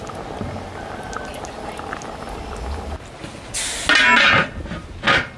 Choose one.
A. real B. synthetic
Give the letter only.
A